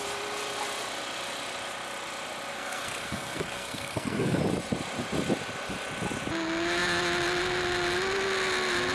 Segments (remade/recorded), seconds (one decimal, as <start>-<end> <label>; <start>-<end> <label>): 0.0-2.5 recorded; 2.5-4.4 remade; 4.4-8.9 recorded